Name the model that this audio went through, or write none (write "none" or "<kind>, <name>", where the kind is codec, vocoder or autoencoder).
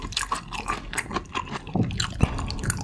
none